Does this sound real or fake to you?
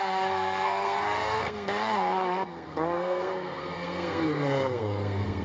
fake